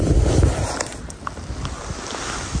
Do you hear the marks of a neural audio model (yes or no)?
no